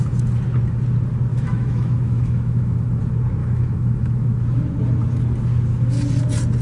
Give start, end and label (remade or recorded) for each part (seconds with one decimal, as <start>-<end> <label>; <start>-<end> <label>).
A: 0.0-1.3 recorded; 1.3-3.0 remade; 3.0-3.4 recorded; 3.4-4.3 remade; 4.3-6.6 recorded